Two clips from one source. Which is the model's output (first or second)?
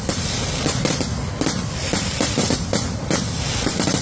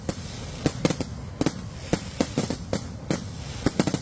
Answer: first